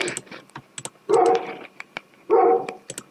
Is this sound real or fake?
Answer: real